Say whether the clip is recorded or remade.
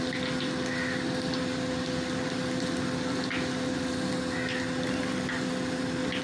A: recorded